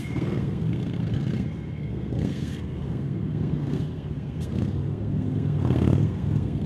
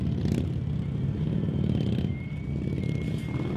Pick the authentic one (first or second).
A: second